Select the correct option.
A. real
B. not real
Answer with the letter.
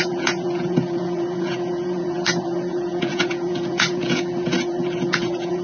B